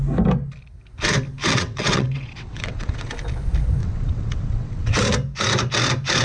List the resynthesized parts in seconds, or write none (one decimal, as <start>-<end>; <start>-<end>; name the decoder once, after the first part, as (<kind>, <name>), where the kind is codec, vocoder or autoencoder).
1.5-3.1 (vocoder, WaveNeXt); 3.8-5.0